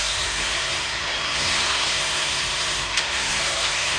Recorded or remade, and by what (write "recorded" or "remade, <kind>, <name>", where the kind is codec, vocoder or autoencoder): remade, codec, SNAC